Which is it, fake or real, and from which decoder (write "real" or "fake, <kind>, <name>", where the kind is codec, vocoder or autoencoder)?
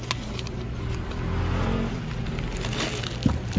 real